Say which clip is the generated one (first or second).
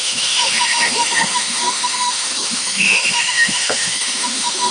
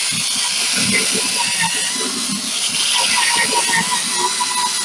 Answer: first